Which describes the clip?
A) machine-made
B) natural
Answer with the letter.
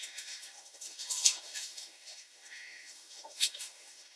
A